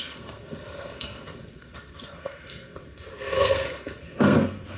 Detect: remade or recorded remade